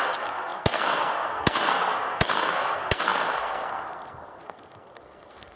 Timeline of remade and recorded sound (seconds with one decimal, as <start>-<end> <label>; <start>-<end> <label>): 0.0-5.6 remade